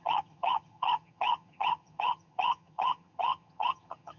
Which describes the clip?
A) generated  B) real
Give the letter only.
A